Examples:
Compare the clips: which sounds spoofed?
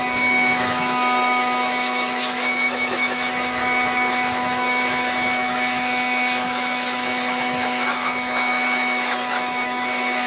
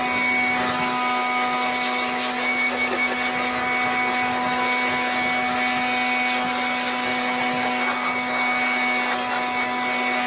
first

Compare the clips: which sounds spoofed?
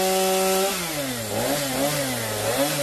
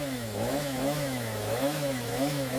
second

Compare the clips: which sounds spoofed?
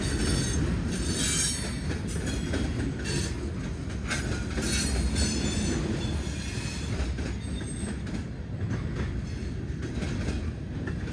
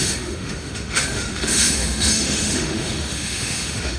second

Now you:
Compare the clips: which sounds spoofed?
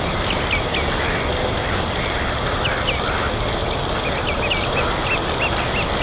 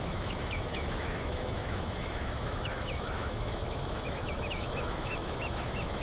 second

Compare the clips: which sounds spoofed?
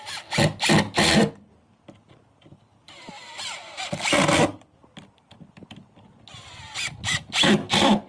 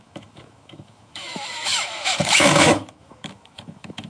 second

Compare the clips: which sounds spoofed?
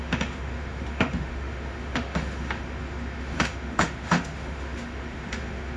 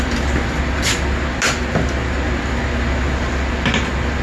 first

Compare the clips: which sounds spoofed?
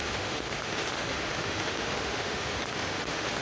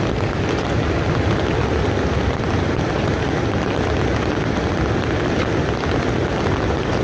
first